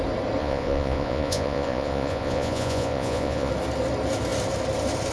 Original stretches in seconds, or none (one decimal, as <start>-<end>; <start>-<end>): 0.0-0.4; 3.5-5.1